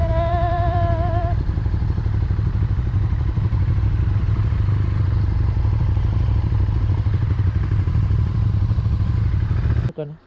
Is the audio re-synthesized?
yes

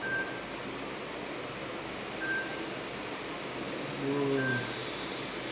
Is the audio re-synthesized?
no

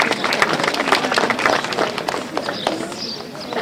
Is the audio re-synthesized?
no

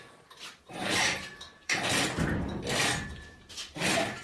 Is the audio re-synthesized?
yes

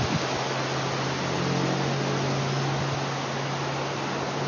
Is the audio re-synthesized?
no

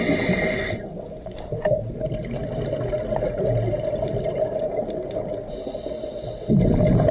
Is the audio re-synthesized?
no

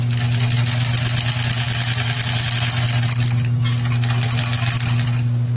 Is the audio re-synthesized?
no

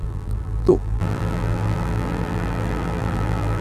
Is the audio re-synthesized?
yes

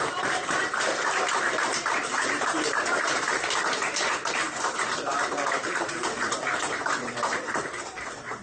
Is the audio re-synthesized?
yes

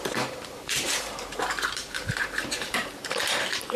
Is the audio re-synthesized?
yes